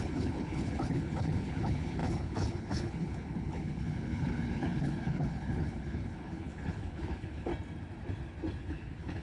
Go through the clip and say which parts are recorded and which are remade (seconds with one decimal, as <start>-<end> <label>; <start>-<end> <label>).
0.0-7.5 remade; 7.5-8.6 recorded; 8.6-9.2 remade